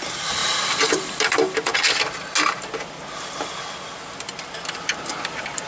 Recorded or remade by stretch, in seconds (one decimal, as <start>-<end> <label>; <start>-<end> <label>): 0.0-0.4 remade; 0.4-0.9 recorded; 0.9-1.7 remade; 1.7-5.1 recorded; 5.1-5.7 remade